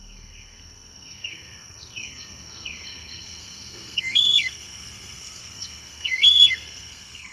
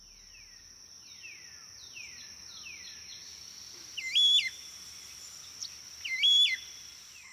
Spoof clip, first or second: first